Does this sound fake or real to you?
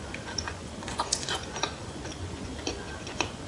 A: fake